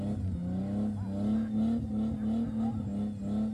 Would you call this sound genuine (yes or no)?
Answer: yes